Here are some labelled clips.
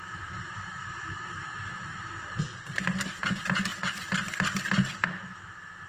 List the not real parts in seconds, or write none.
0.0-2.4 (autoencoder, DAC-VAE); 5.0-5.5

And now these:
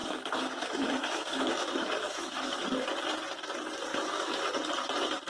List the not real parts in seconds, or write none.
0.0-2.6 (autoencoder, DAC-VAE); 3.9-4.4

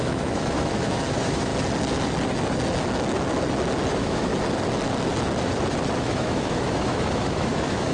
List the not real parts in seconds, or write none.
0.0-1.5 (autoencoder, DAC-VAE); 3.9-4.3; 6.0-7.9

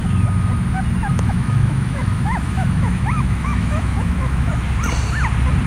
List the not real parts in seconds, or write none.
1.1-4.5 (autoencoder, DAC-VAE)

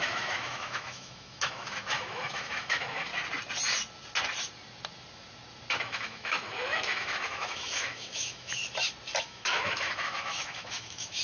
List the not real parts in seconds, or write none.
0.0-3.1 (autoencoder, DAC-VAE); 5.8-8.6; 9.2-11.2

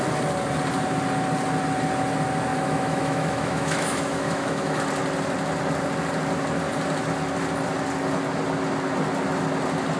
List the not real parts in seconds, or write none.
2.5-4.8 (autoencoder, DAC-VAE)

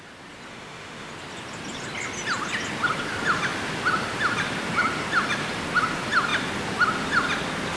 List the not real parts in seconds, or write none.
0.5-1.1 (autoencoder, DAC-VAE)